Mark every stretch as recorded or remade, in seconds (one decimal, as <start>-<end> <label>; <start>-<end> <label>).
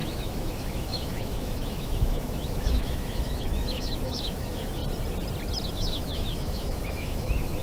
0.0-4.8 remade; 4.8-5.7 recorded; 5.7-7.6 remade